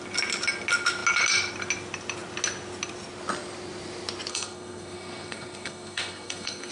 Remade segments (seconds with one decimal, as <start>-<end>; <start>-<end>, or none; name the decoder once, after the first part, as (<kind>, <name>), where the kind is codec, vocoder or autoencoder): 4.3-6.7 (codec, SNAC)